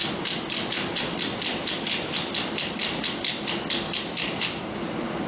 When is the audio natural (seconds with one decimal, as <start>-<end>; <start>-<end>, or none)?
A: 0.0-5.3